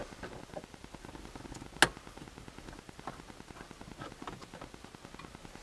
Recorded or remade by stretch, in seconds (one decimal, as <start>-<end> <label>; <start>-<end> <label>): 0.0-5.6 recorded